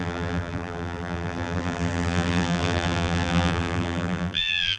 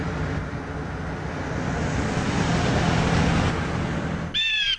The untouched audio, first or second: second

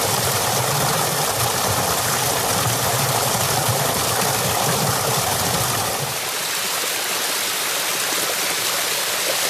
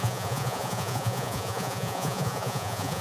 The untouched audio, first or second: first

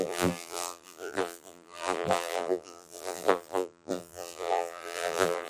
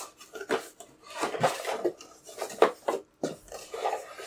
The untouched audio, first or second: second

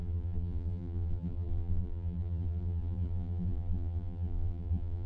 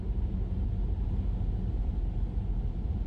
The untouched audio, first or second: second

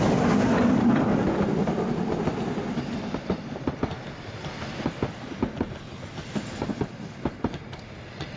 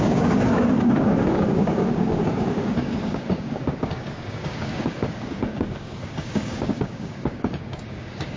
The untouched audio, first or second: first